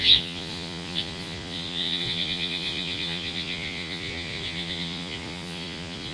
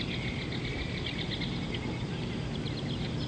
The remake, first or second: first